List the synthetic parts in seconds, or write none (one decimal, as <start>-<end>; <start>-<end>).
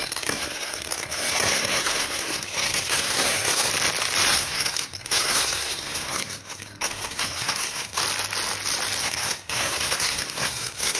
0.0-3.7; 4.3-8.0; 9.0-11.0